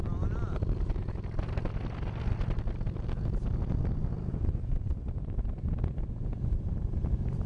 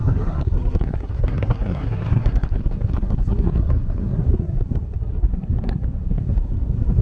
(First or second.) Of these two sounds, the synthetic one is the second